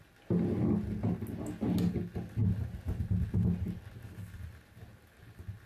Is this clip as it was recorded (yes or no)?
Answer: yes